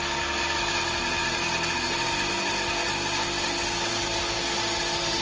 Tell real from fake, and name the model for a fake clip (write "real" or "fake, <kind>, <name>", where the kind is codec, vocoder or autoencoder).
real